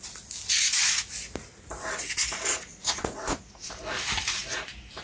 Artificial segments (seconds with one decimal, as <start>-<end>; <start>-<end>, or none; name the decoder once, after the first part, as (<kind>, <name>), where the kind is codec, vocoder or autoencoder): 2.7-3.7 (vocoder, Vocos)